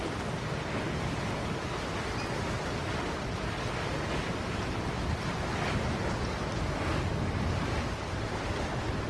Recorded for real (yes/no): yes